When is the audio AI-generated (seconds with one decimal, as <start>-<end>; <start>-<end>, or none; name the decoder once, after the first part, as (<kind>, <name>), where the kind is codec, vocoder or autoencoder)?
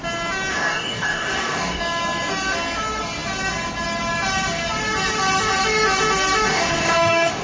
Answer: 0.5-1.8 (codec, DAC); 6.5-7.4